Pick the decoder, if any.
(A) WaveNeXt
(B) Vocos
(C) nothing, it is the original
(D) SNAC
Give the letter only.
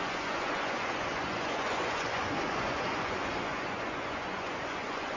B